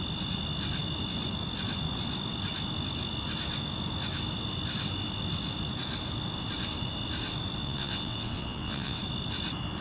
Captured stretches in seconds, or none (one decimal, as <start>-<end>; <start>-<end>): 0.0-7.6; 9.0-9.8